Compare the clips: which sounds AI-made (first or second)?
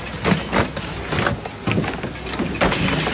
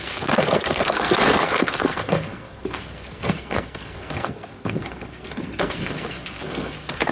second